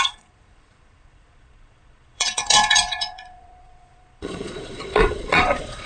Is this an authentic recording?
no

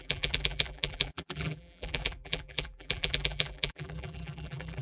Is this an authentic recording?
no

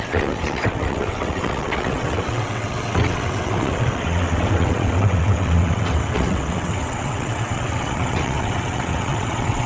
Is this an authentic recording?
no